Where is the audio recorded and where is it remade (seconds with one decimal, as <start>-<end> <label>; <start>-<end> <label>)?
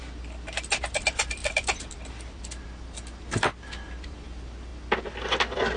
0.0-4.7 remade; 4.7-5.8 recorded